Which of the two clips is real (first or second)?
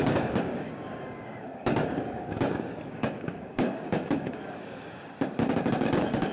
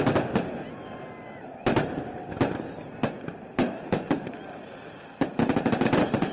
second